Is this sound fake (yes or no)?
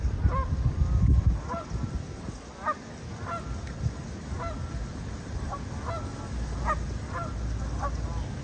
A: no